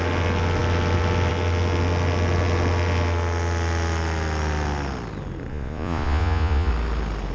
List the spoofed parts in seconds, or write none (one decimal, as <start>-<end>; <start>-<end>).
5.5-6.7